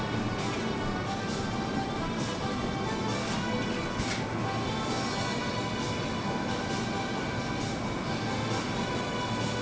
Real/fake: real